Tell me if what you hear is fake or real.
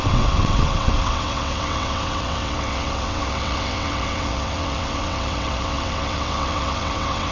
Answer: fake